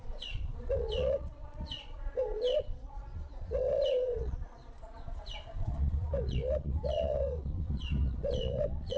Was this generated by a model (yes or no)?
yes